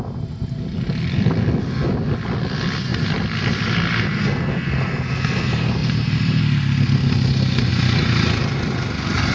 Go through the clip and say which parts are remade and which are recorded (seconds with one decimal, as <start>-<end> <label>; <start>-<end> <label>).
0.0-2.9 recorded; 2.9-3.7 remade; 3.7-5.8 recorded; 5.8-6.4 remade; 6.4-9.3 recorded